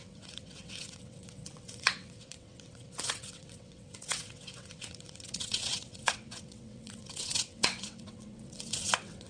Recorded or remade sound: remade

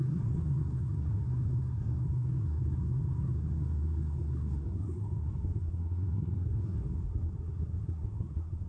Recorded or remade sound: remade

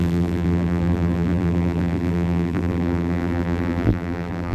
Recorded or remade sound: remade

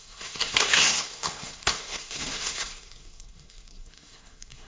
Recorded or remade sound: remade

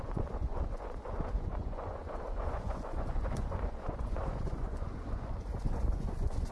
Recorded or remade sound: remade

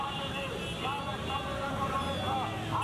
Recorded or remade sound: recorded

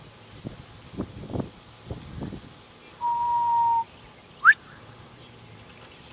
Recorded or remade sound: recorded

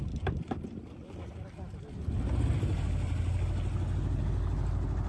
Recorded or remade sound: recorded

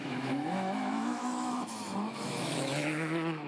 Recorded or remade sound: remade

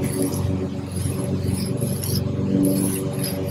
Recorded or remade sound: recorded